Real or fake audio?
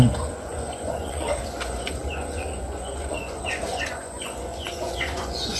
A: fake